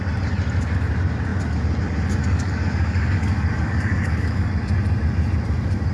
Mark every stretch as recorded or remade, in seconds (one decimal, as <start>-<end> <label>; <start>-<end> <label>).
0.0-2.2 recorded; 2.2-4.5 remade; 4.5-5.9 recorded